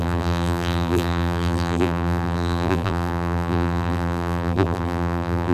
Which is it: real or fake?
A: fake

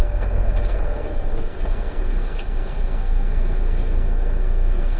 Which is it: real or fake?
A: fake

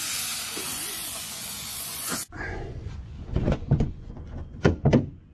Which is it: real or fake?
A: fake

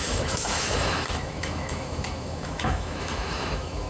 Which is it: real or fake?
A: fake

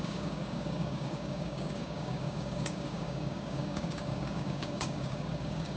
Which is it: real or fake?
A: fake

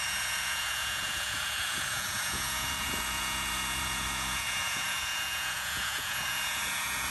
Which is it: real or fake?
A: fake